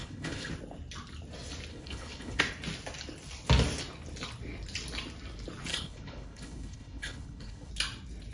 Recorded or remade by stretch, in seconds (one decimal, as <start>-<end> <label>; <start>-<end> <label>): 0.0-0.5 remade; 0.5-1.7 recorded; 1.7-2.4 remade; 2.4-5.7 recorded; 5.7-7.7 remade; 7.7-8.3 recorded